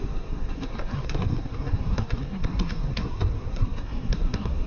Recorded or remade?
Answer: remade